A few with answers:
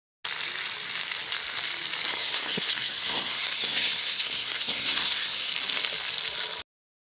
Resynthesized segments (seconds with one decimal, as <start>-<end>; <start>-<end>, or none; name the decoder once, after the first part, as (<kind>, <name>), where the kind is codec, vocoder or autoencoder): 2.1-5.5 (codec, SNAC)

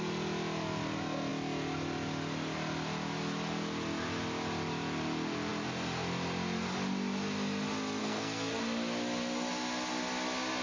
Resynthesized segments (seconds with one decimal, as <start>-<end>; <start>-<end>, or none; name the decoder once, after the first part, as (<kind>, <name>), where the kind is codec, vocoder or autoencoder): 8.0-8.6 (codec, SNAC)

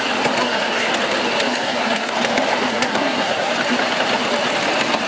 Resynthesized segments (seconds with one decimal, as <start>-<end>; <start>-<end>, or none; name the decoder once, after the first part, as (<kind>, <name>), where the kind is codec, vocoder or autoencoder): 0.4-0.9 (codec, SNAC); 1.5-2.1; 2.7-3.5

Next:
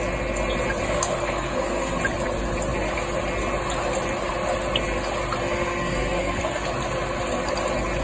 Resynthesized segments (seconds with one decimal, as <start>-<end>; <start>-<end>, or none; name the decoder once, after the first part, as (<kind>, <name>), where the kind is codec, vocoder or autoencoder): 0.8-2.0 (codec, SNAC); 5.4-6.7

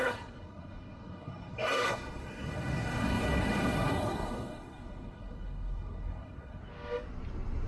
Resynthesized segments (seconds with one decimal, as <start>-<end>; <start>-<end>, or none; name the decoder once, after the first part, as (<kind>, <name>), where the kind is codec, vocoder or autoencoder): 0.0-6.6 (codec, SNAC)